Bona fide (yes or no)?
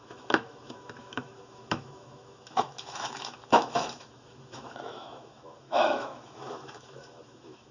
no